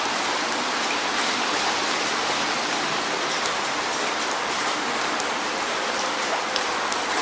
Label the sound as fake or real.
real